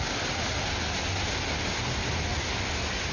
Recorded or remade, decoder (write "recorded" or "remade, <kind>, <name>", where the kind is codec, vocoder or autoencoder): recorded